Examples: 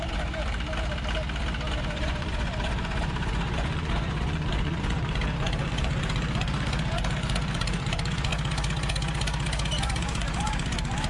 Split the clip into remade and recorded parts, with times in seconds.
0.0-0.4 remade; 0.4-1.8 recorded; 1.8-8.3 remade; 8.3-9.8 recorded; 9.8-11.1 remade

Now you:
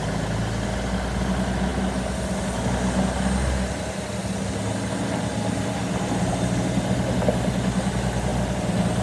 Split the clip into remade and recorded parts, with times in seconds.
0.0-9.0 recorded

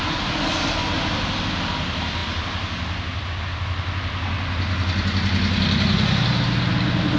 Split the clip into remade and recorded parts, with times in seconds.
0.0-7.2 recorded

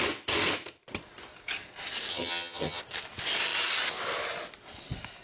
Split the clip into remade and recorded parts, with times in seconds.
0.0-2.1 recorded; 2.1-2.8 remade; 2.8-5.2 recorded

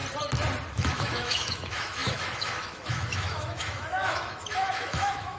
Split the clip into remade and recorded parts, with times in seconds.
0.0-0.7 recorded; 0.7-5.4 remade

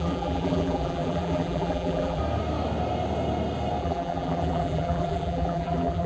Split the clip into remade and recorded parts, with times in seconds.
0.0-2.2 remade; 2.2-3.8 recorded; 3.8-6.1 remade

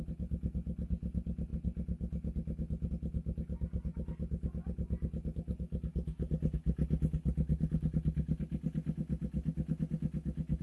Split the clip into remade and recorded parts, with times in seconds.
0.0-10.6 recorded